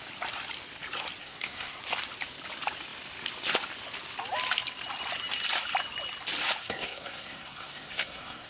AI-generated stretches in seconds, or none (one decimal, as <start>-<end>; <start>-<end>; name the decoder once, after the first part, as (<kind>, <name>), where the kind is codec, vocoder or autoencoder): 1.2-1.8 (codec, SNAC); 6.6-8.5